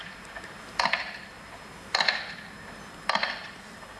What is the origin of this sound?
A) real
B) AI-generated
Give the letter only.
A